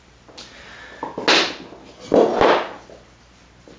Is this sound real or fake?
real